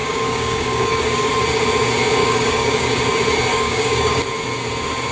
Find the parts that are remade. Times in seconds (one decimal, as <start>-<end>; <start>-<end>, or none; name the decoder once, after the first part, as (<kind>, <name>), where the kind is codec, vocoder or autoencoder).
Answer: 0.0-1.3 (codec, DAC); 2.2-3.0; 3.5-4.2